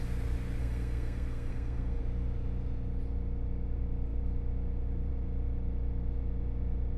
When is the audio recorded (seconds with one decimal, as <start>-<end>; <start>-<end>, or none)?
0.0-0.6; 2.0-7.0